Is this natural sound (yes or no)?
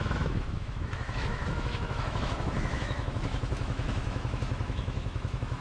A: no